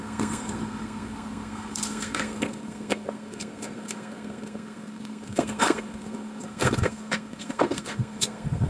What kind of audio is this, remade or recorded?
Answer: remade